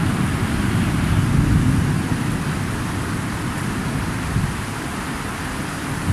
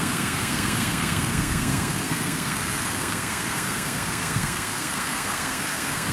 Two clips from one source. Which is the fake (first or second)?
second